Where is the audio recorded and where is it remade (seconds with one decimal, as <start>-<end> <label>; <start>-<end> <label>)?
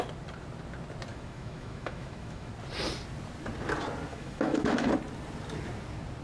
0.0-1.1 recorded; 1.1-2.5 remade; 2.5-4.1 recorded; 4.1-4.9 remade; 4.9-6.2 recorded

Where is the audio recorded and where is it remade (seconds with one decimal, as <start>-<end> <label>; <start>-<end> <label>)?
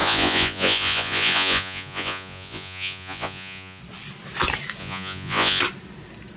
0.0-3.8 remade; 3.8-4.8 recorded; 4.8-5.6 remade; 5.6-6.4 recorded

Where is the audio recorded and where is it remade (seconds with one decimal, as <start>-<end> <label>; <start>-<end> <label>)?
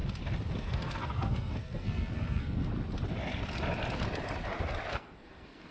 0.0-0.6 recorded; 0.6-2.7 remade; 2.7-4.9 recorded; 4.9-5.7 remade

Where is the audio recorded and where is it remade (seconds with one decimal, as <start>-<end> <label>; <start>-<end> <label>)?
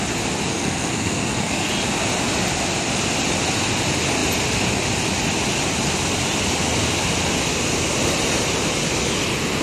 0.0-0.5 recorded; 0.5-1.7 remade; 1.7-9.6 recorded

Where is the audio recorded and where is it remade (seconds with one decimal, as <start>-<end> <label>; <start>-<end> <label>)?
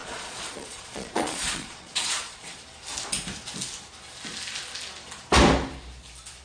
0.0-2.6 remade; 2.6-6.4 recorded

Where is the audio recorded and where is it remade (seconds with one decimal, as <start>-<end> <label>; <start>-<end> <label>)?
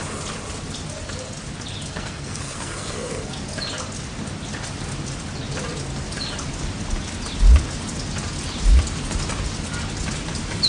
0.0-1.9 recorded; 1.9-3.3 remade; 3.3-10.7 recorded